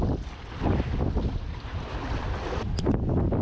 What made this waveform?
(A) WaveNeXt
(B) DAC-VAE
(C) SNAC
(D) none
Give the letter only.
D